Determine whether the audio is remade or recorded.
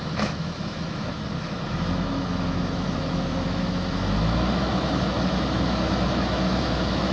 remade